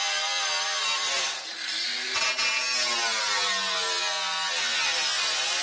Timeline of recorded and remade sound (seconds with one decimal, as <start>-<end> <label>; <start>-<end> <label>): 0.0-5.6 recorded